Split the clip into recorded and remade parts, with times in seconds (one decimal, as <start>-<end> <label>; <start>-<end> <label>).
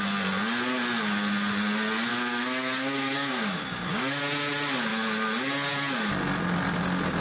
0.0-2.1 recorded; 2.1-4.2 remade; 4.2-7.2 recorded